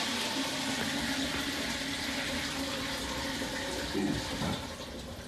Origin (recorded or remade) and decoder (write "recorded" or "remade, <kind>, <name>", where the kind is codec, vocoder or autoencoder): recorded